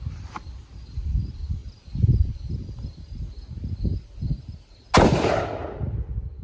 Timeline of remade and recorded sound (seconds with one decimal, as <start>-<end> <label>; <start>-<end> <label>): 0.0-6.4 recorded